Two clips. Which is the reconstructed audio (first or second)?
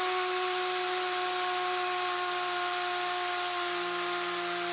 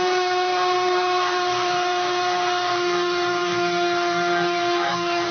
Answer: second